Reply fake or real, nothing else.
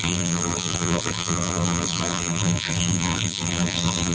fake